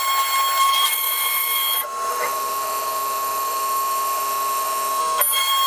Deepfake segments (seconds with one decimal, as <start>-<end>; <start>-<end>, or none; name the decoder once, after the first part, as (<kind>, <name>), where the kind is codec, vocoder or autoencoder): 2.1-5.0 (autoencoder, DAC-VAE)